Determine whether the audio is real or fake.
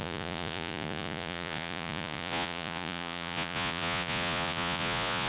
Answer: fake